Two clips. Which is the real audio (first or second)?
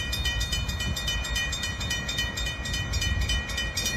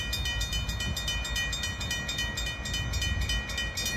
second